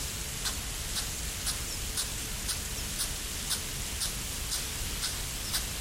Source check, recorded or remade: recorded